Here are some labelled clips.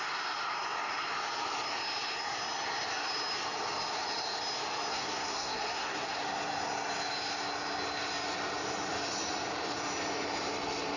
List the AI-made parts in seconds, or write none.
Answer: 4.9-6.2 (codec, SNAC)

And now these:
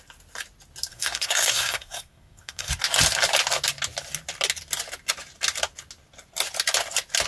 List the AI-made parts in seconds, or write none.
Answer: 0.9-2.7 (codec, SNAC)

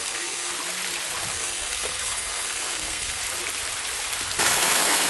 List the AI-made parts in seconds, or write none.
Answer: 0.0-0.5 (codec, SNAC); 1.3-3.2; 4.4-5.1

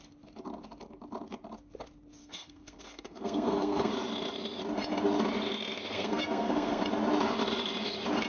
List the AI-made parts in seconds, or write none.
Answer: 2.2-3.9 (codec, SNAC); 5.9-6.8

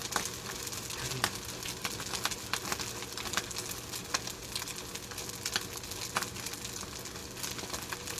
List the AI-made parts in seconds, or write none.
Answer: none

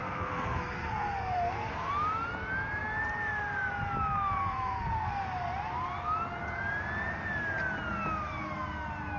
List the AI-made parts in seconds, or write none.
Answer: 0.0-1.9 (codec, SNAC); 4.4-5.1

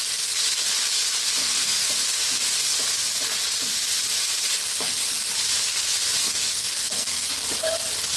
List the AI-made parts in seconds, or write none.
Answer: 1.4-1.9 (codec, SNAC); 6.2-7.3

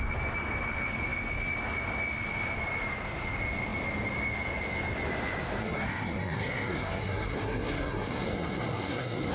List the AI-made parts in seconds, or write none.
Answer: 5.6-9.3 (codec, SNAC)